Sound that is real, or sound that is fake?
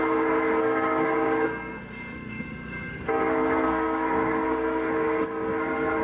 fake